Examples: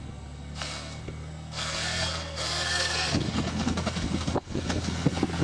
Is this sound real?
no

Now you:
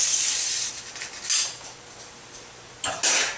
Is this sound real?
yes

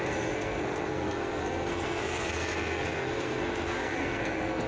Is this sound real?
no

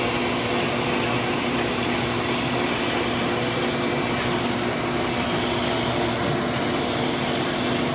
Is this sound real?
yes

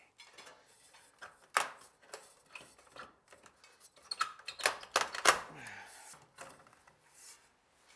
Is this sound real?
yes